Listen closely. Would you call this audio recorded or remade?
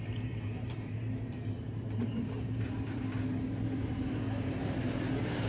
remade